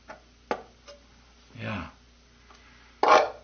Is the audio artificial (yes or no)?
no